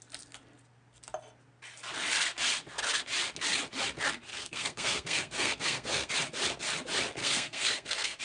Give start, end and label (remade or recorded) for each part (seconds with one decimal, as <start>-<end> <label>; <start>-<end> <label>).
0.0-4.3 recorded; 4.3-6.1 remade; 6.1-7.2 recorded; 7.2-8.2 remade